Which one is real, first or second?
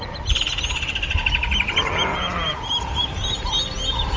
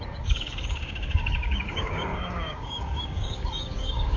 first